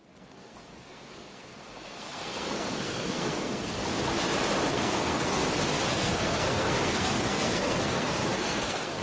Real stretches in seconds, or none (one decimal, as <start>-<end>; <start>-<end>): 3.8-4.7; 5.4-5.9